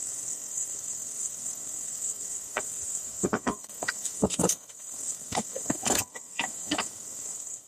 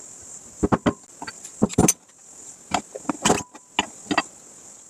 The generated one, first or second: first